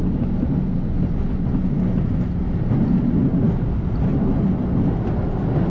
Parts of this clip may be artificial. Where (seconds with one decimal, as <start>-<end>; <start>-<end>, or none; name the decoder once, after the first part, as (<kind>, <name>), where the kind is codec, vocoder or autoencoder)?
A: none